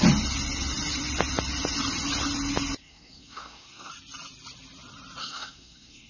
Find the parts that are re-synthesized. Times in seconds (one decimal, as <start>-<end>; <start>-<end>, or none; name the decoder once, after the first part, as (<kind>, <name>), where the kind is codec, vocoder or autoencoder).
2.8-3.9 (codec, SNAC); 5.2-6.1